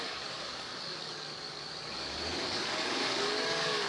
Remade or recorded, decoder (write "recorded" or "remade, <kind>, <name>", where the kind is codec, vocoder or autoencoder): remade, codec, DAC